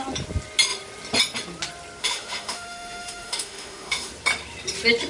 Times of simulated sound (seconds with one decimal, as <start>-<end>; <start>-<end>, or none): 2.0-4.1